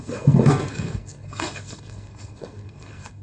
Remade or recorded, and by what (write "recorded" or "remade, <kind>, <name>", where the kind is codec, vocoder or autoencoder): remade, codec, SNAC